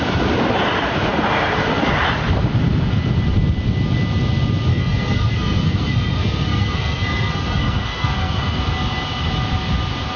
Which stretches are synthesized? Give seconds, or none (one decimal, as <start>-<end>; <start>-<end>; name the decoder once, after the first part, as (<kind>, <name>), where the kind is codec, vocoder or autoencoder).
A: 4.7-8.6 (codec, SNAC)

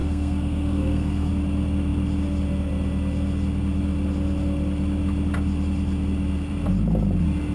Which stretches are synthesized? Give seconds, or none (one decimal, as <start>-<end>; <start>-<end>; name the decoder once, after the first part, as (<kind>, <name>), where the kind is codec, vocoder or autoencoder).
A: 0.0-1.3 (codec, SNAC)

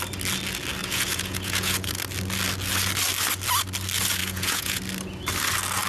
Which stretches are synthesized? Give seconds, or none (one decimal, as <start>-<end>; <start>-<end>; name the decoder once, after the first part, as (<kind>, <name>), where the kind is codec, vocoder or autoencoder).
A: 0.8-1.9 (vocoder, Vocos); 4.2-4.8